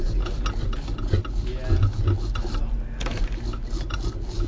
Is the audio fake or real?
real